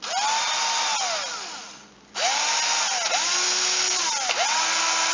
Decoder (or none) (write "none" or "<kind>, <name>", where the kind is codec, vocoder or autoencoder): none